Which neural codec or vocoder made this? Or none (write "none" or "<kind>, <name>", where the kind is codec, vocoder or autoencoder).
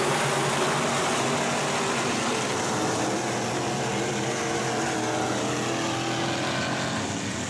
none